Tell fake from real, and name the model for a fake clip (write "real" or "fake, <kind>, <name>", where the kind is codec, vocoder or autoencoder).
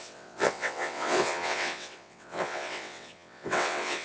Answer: fake, vocoder, WaveNeXt